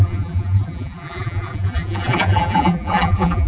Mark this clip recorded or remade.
remade